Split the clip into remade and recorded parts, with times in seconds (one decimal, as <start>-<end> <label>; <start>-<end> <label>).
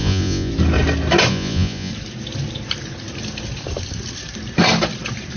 0.0-0.5 remade; 0.5-1.3 recorded; 1.3-1.9 remade; 1.9-5.4 recorded